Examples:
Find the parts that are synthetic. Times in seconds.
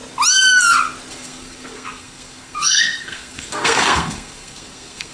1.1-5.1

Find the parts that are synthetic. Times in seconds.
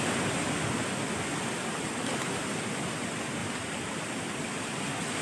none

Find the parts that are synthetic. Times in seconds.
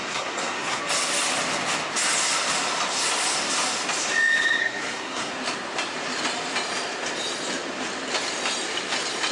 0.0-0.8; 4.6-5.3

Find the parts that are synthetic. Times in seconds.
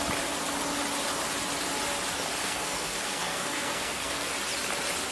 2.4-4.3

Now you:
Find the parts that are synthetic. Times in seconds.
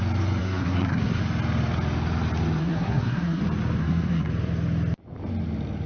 0.4-1.2; 2.6-3.4; 3.8-4.3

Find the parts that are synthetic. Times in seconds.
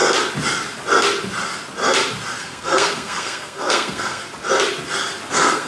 2.4-4.2; 5.3-5.7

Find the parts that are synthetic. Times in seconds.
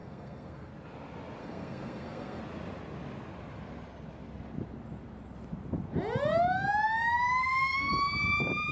0.0-0.7; 1.4-2.4; 7.4-7.9